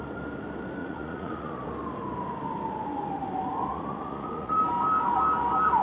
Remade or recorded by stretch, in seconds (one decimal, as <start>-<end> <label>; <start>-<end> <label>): 0.0-0.8 recorded; 0.8-1.7 remade; 1.7-3.7 recorded; 3.7-4.6 remade; 4.6-5.8 recorded